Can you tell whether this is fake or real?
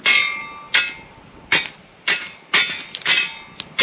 real